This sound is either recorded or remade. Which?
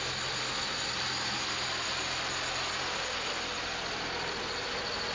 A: recorded